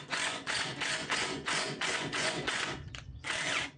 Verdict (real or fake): fake